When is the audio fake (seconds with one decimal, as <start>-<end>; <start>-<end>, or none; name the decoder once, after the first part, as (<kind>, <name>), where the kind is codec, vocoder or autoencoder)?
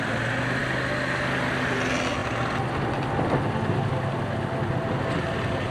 none